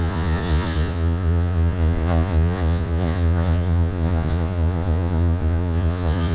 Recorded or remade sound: remade